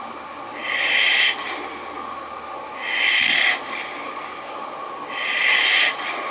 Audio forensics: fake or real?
real